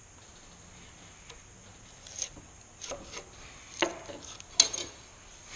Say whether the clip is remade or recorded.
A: recorded